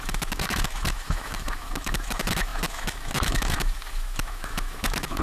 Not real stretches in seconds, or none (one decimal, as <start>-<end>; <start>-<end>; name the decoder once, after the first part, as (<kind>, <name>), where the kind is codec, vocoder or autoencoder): 0.0-5.2 (autoencoder, DAC-VAE)